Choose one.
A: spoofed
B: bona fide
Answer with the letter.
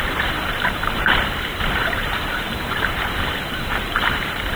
A